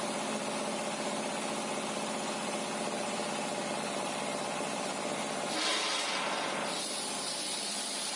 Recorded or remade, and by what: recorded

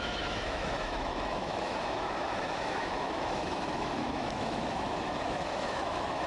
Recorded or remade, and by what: remade, autoencoder, DAC-VAE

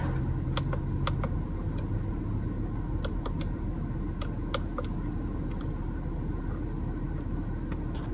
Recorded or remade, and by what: recorded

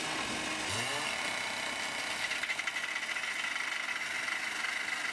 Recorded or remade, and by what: recorded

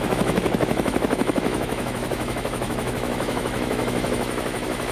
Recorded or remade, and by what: remade, autoencoder, DAC-VAE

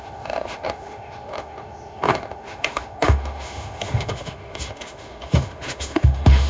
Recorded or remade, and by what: remade, autoencoder, DAC-VAE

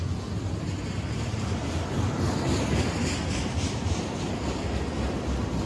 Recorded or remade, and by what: recorded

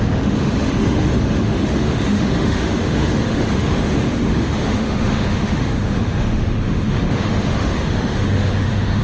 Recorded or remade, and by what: remade, autoencoder, DAC-VAE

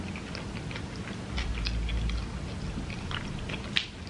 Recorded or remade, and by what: recorded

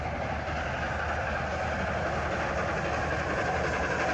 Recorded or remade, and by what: recorded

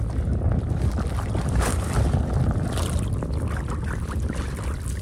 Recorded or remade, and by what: recorded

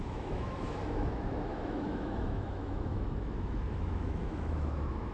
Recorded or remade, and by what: remade, autoencoder, DAC-VAE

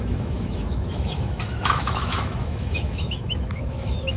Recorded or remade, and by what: remade, autoencoder, DAC-VAE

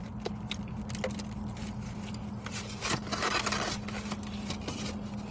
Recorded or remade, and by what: recorded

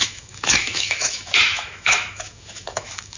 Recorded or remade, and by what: remade, autoencoder, DAC-VAE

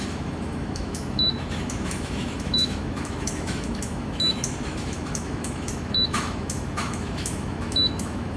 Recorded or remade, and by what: remade, autoencoder, DAC-VAE